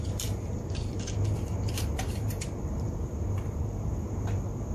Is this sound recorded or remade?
remade